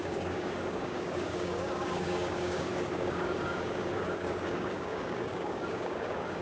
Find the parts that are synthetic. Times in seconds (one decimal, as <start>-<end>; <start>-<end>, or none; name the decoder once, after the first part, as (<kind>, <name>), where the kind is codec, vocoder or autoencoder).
0.0-6.4 (codec, DAC)